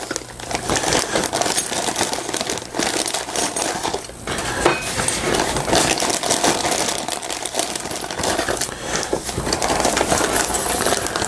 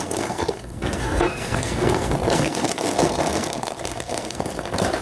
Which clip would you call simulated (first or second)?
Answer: second